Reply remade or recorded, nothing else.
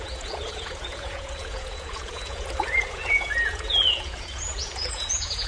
remade